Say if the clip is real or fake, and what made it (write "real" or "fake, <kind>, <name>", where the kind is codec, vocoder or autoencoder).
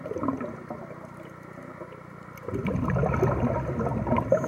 real